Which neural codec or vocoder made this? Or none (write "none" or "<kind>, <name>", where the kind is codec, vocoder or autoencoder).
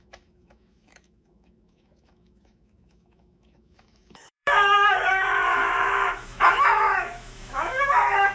autoencoder, DAC-VAE